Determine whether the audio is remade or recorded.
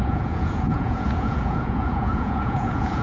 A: remade